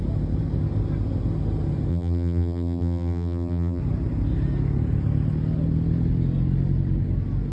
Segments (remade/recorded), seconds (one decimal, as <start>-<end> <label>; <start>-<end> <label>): 0.0-1.9 recorded; 1.9-3.8 remade; 3.8-7.5 recorded

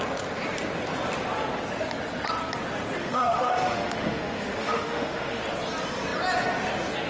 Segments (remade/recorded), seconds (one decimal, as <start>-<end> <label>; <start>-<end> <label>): 0.0-3.0 recorded; 3.0-5.4 remade; 5.4-7.1 recorded

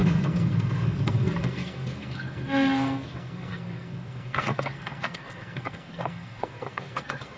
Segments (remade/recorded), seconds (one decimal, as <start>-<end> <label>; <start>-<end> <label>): 0.0-7.4 remade

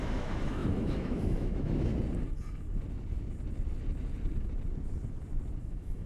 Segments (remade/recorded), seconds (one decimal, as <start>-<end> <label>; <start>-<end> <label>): 0.0-1.9 remade; 1.9-5.6 recorded; 5.6-6.1 remade

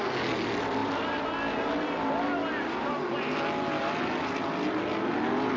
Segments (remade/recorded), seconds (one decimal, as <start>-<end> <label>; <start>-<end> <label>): 0.0-5.6 recorded

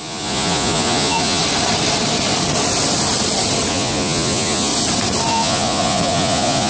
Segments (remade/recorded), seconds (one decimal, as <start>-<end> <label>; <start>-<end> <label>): 0.0-1.4 remade; 1.4-3.7 recorded; 3.7-4.7 remade; 4.7-5.3 recorded; 5.3-6.7 remade

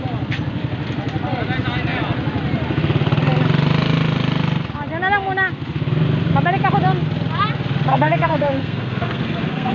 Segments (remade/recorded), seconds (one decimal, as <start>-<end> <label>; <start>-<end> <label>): 0.0-7.9 recorded; 7.9-9.7 remade

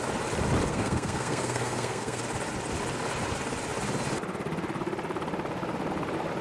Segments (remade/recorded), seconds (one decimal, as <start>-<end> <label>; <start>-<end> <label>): 0.0-0.7 recorded; 0.7-2.2 remade; 2.2-6.4 recorded